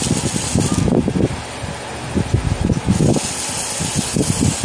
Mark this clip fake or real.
real